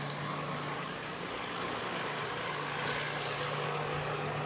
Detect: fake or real fake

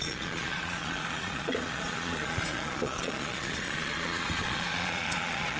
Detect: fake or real fake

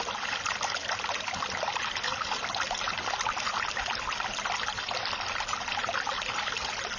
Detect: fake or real real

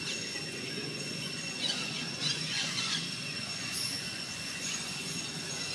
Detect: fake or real fake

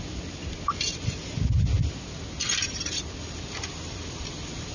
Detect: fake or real real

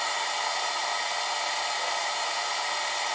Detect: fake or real real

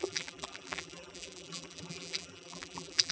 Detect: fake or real fake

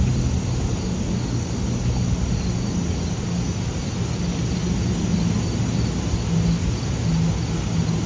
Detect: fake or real real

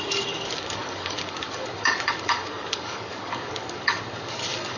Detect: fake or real fake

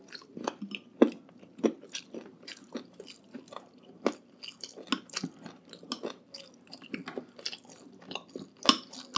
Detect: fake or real real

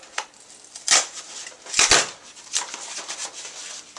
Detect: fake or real real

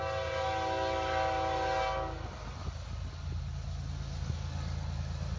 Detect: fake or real real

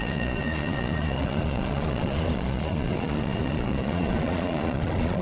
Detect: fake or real fake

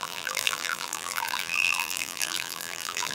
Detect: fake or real fake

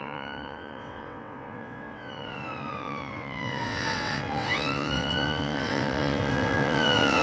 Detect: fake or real fake